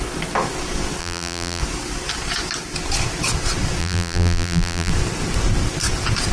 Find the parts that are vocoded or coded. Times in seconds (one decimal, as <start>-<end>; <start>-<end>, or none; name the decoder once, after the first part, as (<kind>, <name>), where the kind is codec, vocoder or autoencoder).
1.0-1.6 (vocoder, BigVGAN v2); 3.8-4.9